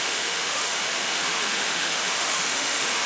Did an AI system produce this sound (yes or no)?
yes